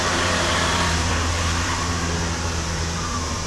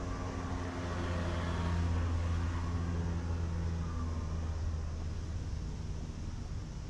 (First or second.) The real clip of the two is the second